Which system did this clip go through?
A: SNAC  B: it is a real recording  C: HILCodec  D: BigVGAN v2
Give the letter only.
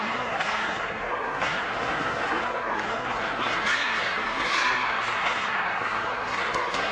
A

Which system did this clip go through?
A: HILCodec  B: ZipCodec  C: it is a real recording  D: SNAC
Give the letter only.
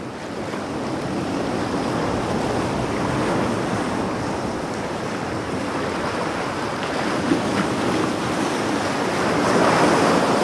C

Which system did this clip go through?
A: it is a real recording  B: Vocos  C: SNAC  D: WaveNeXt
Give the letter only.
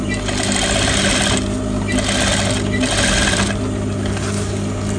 A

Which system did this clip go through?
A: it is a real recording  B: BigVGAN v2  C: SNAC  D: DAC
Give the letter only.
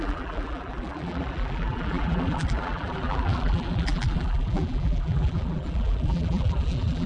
B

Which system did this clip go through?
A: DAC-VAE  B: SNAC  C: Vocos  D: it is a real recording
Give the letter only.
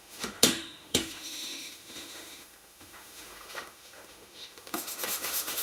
A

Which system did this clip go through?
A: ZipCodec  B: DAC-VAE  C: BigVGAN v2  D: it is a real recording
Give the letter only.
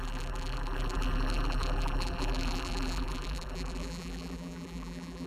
C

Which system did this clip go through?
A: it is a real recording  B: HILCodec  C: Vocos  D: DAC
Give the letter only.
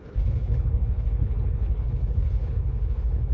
B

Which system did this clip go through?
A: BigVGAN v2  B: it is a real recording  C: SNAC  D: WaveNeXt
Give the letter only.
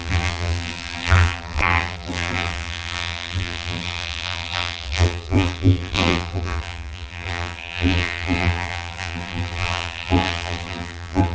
A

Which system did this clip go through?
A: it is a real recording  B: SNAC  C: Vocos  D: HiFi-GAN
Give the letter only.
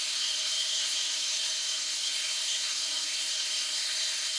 B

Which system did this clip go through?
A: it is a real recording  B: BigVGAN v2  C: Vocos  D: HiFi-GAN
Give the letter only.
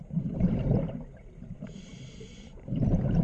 B